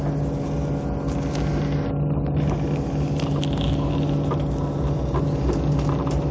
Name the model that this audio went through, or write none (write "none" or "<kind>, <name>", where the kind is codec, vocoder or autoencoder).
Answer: none